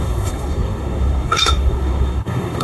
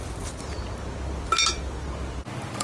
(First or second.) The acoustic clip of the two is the second